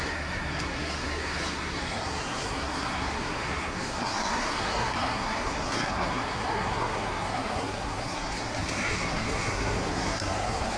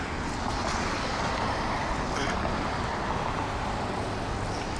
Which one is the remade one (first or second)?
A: first